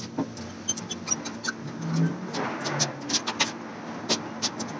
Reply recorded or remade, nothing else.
recorded